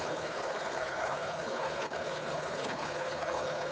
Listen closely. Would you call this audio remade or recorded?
remade